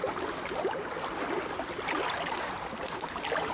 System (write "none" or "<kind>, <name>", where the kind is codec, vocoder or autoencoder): none